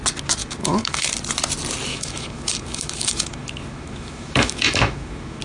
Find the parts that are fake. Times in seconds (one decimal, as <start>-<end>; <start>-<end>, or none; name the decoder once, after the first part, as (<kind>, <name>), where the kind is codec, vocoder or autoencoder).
0.4-1.1 (autoencoder, DAC-VAE); 1.9-5.4